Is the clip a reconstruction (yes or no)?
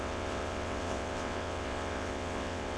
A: yes